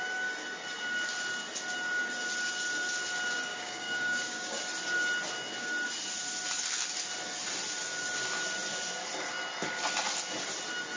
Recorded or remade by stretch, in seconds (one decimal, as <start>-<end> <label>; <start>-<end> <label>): 0.0-3.5 recorded; 3.5-4.6 remade; 4.6-11.0 recorded